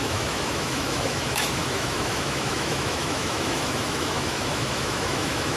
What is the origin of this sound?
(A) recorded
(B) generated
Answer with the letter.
B